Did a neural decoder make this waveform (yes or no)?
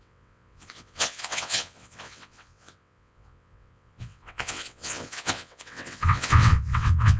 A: yes